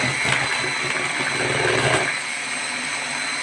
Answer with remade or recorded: recorded